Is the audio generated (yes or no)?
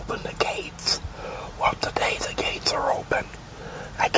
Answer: no